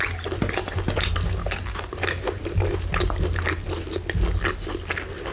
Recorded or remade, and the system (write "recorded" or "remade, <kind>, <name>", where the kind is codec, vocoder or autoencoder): recorded